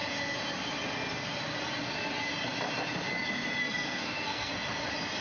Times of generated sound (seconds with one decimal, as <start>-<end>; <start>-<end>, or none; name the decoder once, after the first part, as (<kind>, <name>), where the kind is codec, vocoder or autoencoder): 3.6-4.5 (codec, SNAC)